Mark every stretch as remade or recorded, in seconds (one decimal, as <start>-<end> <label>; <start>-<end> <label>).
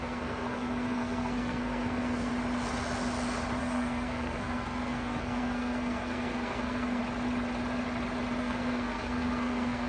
0.0-2.3 remade; 2.3-3.6 recorded; 3.6-7.0 remade; 7.0-8.4 recorded; 8.4-9.9 remade